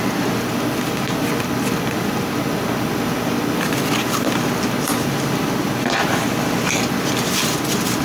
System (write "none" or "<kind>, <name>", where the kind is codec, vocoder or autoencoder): vocoder, BigVGAN v2